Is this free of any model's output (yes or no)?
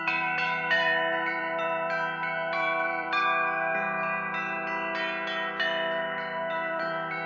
no